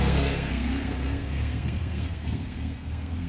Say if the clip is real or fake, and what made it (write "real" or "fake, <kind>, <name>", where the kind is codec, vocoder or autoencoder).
fake, codec, SNAC